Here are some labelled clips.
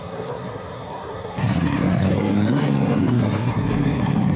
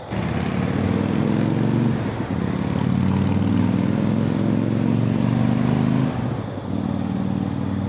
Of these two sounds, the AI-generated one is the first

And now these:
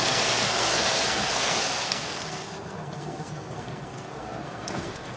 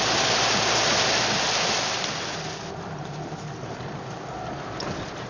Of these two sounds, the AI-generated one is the first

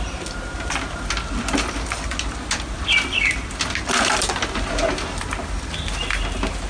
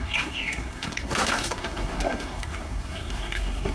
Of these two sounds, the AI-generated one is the second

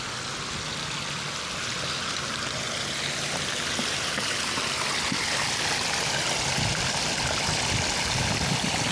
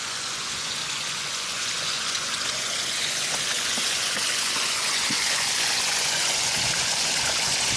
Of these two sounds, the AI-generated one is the second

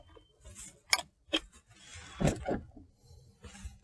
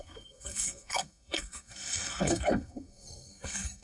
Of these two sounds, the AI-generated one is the second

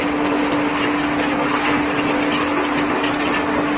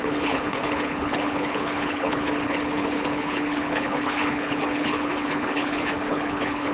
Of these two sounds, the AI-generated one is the second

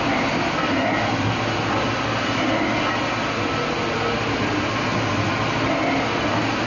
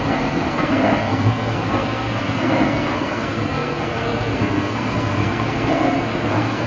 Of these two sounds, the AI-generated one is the second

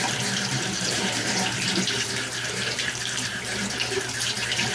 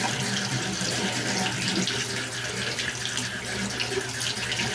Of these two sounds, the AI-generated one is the first